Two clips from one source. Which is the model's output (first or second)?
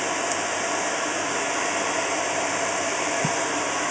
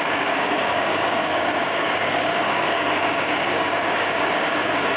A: second